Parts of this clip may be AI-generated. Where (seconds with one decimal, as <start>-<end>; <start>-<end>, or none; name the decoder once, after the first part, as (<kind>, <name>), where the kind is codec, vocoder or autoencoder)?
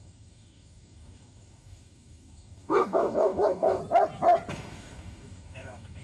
0.0-3.8 (codec, DAC); 4.5-6.0